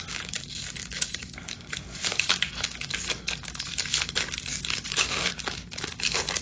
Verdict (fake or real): fake